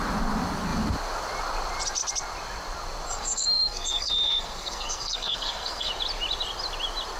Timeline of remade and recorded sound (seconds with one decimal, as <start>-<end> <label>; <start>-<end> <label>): 0.0-3.1 recorded; 3.1-5.9 remade; 5.9-7.2 recorded